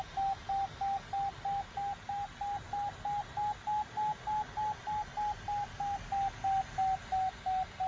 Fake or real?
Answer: real